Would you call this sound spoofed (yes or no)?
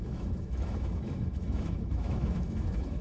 yes